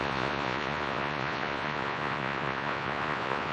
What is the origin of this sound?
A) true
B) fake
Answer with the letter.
B